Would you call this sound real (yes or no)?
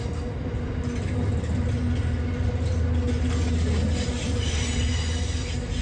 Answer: yes